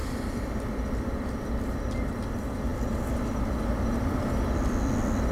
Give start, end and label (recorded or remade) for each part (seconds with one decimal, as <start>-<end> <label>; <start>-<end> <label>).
0.0-5.3 recorded